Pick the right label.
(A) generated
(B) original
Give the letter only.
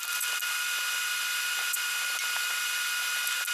B